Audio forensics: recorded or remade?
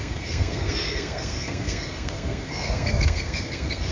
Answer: remade